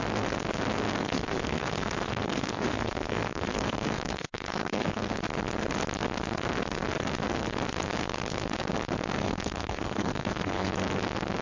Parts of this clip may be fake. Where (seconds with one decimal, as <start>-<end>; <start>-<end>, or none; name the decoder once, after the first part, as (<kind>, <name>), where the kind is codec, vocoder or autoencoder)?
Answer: 1.0-5.1 (codec, SNAC); 9.2-10.7